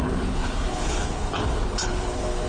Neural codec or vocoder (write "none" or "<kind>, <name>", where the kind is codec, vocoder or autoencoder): codec, HILCodec